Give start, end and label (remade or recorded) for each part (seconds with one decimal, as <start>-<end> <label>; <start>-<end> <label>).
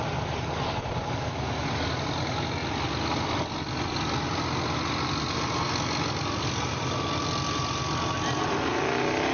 0.0-9.3 recorded